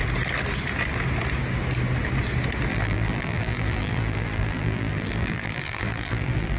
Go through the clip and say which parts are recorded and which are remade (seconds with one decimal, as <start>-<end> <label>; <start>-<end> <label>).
0.0-2.7 recorded; 2.7-6.6 remade